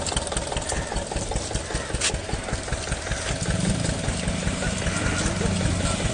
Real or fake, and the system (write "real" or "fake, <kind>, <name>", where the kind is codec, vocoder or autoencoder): real